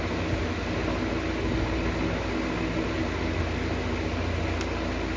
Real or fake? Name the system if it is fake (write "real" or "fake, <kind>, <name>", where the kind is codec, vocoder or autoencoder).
real